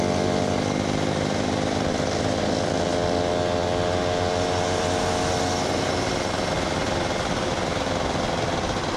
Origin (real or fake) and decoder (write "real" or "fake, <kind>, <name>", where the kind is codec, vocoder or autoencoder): real